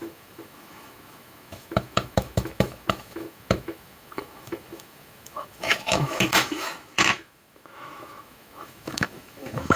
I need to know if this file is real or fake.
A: fake